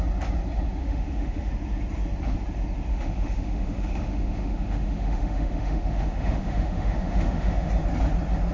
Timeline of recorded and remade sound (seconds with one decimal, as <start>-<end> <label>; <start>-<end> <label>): 0.0-0.8 recorded; 0.8-1.5 remade; 1.5-2.9 recorded; 2.9-7.7 remade; 7.7-8.5 recorded